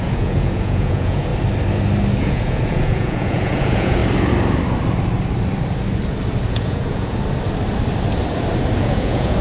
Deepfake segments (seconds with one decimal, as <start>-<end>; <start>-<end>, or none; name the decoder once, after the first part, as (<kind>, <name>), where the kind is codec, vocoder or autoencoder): 0.0-1.3 (vocoder, Vocos); 2.2-4.0; 6.5-7.2; 8.8-9.4